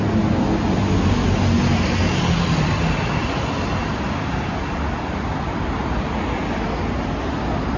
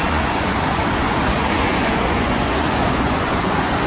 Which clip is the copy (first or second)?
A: second